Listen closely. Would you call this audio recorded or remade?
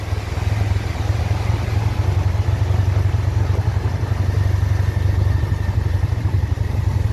recorded